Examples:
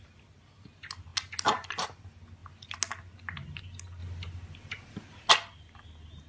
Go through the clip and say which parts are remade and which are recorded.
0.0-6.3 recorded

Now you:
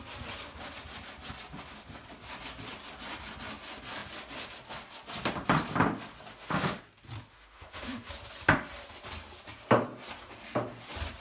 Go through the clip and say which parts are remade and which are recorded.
0.0-6.3 recorded; 6.3-6.8 remade; 6.8-7.3 recorded; 7.3-8.1 remade; 8.1-11.2 recorded

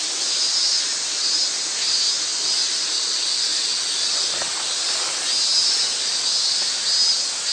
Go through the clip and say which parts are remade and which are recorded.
0.0-7.5 recorded

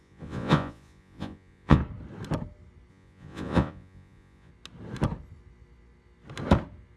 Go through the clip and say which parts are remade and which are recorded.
0.0-1.8 remade; 1.8-2.9 recorded; 2.9-4.5 remade; 4.5-7.0 recorded

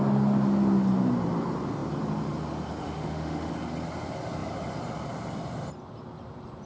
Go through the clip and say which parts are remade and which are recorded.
0.0-2.8 recorded; 2.8-3.5 remade; 3.5-6.7 recorded

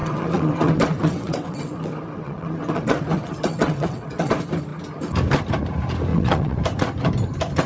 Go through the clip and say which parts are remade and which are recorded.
0.0-4.3 remade; 4.3-6.1 recorded; 6.1-6.6 remade; 6.6-7.7 recorded

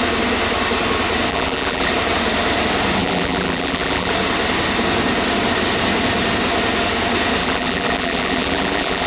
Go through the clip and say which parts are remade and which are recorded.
0.0-1.3 recorded; 1.3-1.9 remade; 1.9-3.0 recorded; 3.0-4.1 remade; 4.1-7.4 recorded; 7.4-9.1 remade

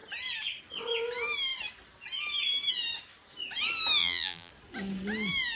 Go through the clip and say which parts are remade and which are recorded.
0.0-4.0 recorded; 4.0-4.5 remade; 4.5-5.6 recorded